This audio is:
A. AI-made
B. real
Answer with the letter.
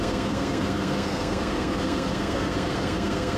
A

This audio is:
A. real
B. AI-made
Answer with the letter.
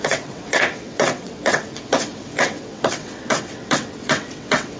B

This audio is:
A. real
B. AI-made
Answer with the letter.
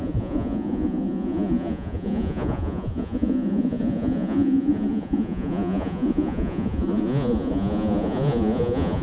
B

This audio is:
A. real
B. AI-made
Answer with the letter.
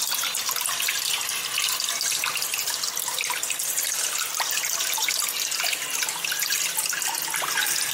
A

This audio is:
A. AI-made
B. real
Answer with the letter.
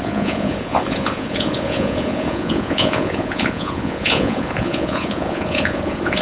A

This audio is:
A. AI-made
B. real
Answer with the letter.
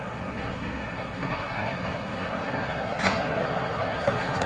A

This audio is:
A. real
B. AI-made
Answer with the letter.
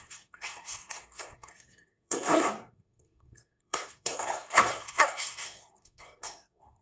B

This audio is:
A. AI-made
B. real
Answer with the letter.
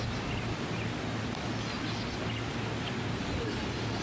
B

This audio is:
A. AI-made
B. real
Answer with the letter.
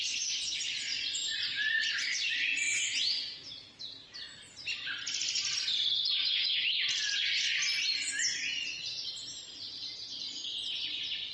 B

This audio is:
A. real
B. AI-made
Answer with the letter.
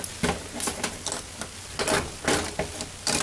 A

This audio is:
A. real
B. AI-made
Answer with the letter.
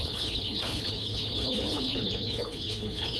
B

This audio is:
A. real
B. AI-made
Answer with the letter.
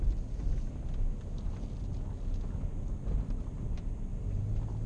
A